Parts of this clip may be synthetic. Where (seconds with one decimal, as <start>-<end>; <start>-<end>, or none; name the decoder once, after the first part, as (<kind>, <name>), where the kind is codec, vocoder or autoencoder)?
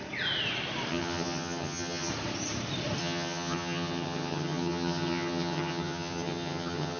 0.9-2.1 (vocoder, HiFi-GAN); 3.0-7.0